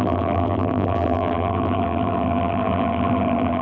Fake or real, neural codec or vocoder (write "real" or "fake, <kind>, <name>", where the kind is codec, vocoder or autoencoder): fake, vocoder, BigVGAN v2